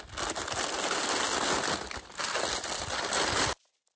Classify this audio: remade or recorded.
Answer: recorded